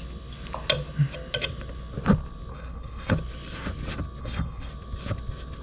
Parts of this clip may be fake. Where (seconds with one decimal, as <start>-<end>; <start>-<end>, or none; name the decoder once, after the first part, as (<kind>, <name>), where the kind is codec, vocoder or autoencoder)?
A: 2.5-3.1 (codec, HILCodec); 4.2-4.7